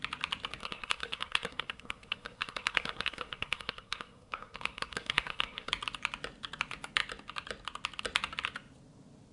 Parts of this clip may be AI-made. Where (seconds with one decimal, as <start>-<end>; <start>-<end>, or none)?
0.6-5.7